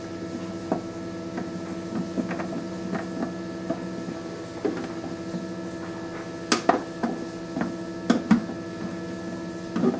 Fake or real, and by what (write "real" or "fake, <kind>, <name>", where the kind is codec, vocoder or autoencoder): real